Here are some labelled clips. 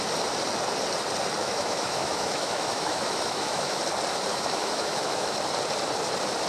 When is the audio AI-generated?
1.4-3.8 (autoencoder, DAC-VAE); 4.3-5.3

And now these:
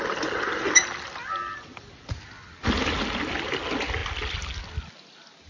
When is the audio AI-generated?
none